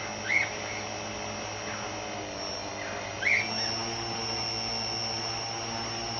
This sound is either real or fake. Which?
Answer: real